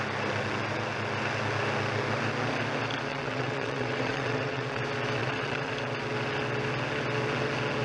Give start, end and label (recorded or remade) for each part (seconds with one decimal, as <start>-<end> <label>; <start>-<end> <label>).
0.0-3.1 recorded; 3.1-4.8 remade; 4.8-5.2 recorded; 5.2-5.7 remade; 5.7-7.8 recorded